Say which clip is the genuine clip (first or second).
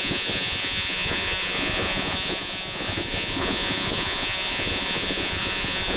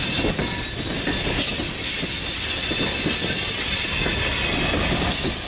second